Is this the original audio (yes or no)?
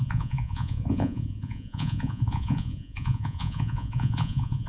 no